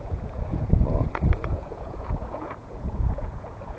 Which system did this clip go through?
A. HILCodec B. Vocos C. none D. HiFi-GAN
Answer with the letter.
B